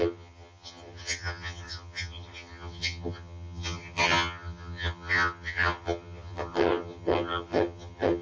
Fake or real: fake